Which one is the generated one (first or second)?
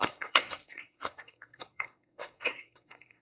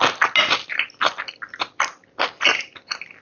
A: first